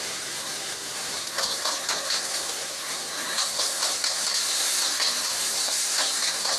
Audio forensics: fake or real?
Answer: fake